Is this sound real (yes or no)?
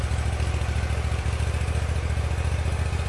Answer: yes